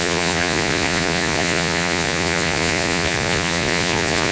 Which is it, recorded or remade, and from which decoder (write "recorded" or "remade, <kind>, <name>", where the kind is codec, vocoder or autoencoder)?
remade, vocoder, Vocos